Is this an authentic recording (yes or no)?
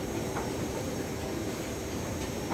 no